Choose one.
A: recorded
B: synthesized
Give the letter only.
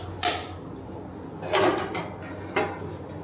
A